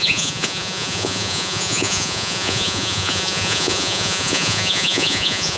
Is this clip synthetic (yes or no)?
yes